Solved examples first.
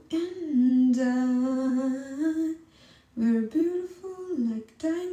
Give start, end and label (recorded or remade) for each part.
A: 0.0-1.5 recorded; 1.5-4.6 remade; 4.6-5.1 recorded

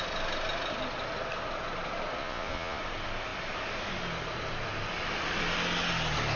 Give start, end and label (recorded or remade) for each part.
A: 0.0-2.2 recorded; 2.2-2.8 remade; 2.8-6.4 recorded

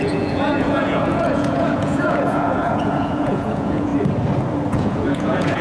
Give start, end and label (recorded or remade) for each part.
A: 0.0-3.9 remade; 3.9-4.7 recorded; 4.7-5.6 remade

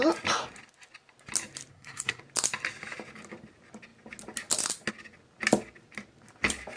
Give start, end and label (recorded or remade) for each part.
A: 0.0-1.7 recorded; 1.7-2.2 remade; 2.2-6.8 recorded

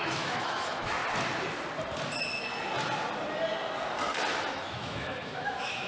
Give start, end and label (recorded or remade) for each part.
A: 0.0-1.0 remade; 1.0-4.5 recorded; 4.5-5.9 remade

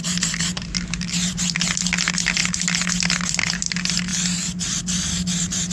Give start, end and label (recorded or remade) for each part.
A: 0.0-5.7 recorded